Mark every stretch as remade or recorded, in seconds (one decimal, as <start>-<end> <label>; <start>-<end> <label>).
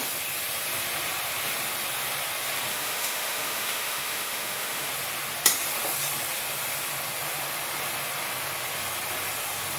0.0-2.7 recorded; 2.7-4.9 remade; 4.9-9.8 recorded